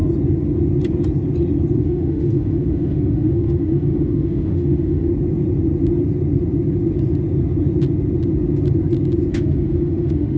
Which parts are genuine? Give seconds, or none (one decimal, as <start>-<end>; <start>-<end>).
0.0-1.8; 5.1-9.3

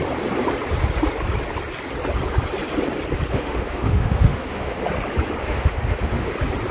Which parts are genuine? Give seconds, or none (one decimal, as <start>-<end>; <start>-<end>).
0.0-3.3; 4.8-5.4; 6.3-6.7